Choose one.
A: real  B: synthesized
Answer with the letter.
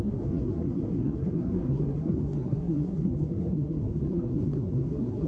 B